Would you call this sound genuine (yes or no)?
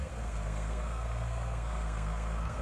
no